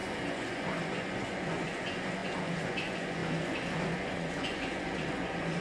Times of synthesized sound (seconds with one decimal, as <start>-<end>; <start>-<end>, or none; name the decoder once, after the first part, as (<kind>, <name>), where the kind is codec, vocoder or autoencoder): 0.0-5.6 (vocoder, Vocos)